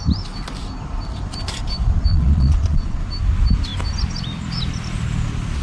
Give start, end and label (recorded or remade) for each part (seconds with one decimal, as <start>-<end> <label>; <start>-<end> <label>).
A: 0.0-2.1 recorded; 2.1-3.0 remade; 3.0-5.6 recorded